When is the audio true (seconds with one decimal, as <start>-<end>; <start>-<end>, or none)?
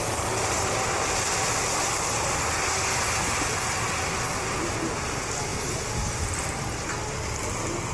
0.0-7.9